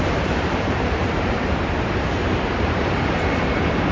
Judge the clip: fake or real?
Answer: fake